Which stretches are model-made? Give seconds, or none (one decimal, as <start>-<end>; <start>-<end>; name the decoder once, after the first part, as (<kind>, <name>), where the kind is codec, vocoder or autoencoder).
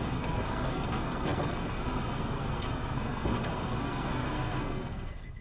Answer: 0.0-5.4 (codec, SNAC)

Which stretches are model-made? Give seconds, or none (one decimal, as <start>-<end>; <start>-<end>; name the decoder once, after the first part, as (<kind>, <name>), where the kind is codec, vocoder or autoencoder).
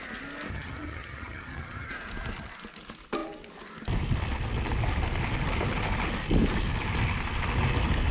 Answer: 0.5-1.9 (vocoder, HiFi-GAN)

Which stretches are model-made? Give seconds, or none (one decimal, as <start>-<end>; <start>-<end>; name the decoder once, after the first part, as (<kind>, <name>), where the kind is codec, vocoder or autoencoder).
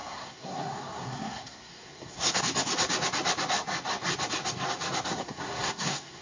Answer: 0.0-2.4 (codec, SNAC); 5.1-6.2